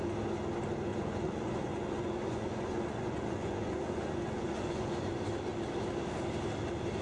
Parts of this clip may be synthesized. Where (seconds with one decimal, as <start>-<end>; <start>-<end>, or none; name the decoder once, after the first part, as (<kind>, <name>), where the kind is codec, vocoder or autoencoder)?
0.9-5.1 (vocoder, Vocos)